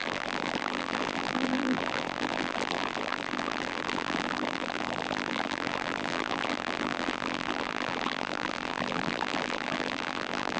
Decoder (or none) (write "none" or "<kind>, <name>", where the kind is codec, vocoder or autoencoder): vocoder, BigVGAN v2